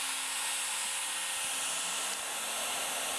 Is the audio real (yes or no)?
yes